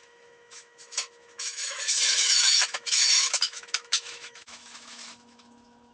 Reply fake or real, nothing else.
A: fake